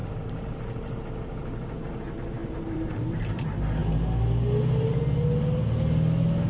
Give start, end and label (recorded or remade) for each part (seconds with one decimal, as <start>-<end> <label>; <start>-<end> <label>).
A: 0.0-1.0 remade; 1.0-2.4 recorded; 2.4-3.2 remade; 3.2-6.5 recorded

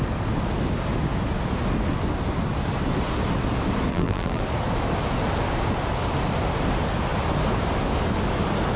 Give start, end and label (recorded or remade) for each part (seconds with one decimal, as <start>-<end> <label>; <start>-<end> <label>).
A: 0.0-3.9 recorded; 3.9-4.4 remade; 4.4-8.8 recorded